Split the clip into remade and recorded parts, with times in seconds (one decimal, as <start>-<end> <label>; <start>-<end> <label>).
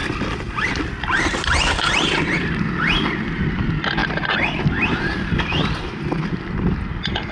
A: 0.0-7.3 recorded